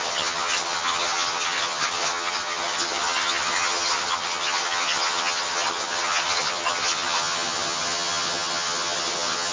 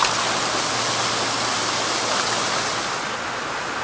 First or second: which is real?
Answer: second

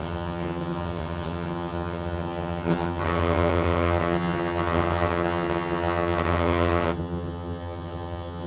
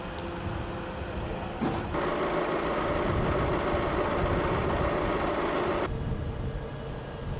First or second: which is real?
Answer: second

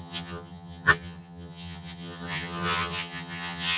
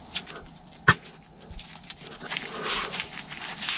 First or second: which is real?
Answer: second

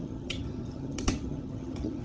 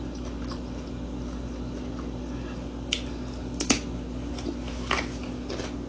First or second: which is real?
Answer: second